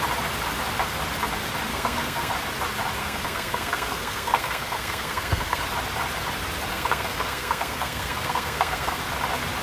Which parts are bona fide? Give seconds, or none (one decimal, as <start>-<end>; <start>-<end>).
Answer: 0.0-1.7; 2.3-3.0; 5.6-6.7; 9.0-9.6